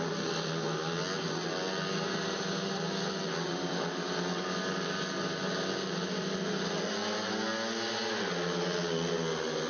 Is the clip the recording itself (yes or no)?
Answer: yes